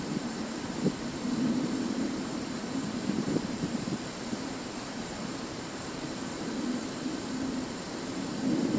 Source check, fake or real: fake